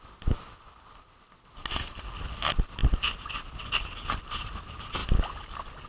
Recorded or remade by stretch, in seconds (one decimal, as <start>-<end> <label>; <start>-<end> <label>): 0.0-5.9 recorded